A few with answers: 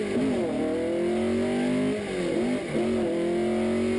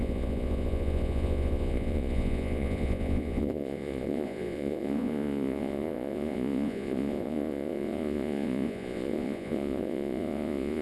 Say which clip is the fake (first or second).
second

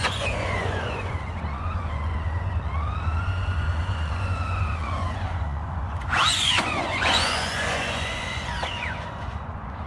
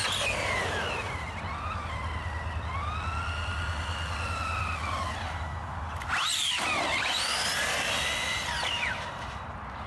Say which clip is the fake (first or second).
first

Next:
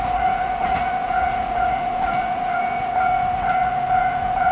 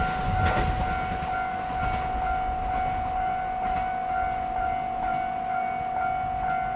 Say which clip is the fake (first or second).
first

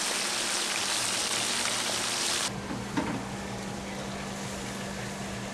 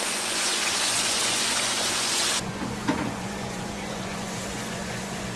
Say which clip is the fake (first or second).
second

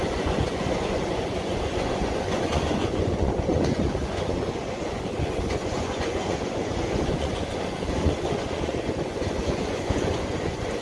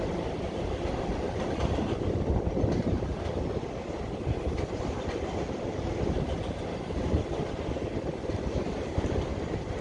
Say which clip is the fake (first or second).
first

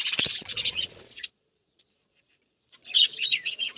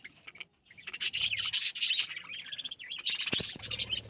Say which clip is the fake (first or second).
first